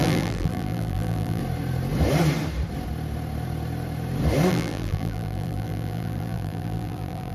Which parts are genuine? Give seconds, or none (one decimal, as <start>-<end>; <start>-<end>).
1.4-4.5